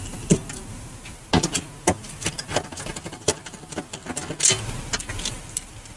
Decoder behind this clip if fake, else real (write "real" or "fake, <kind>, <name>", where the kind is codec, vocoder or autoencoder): real